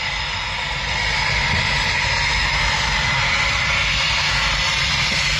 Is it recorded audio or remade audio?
recorded